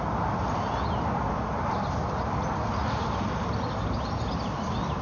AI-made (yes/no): no